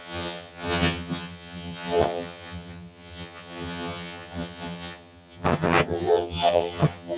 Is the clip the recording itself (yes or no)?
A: no